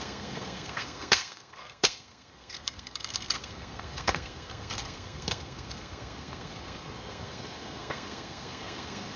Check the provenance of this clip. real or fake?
fake